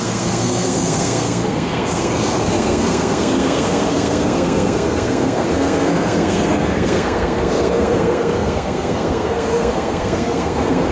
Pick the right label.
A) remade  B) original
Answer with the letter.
A